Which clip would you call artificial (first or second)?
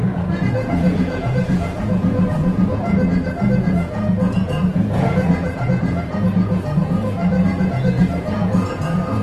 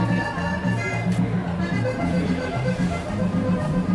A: first